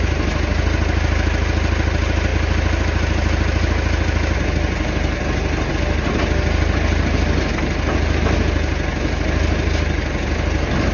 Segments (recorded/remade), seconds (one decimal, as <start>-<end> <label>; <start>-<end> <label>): 0.0-10.9 recorded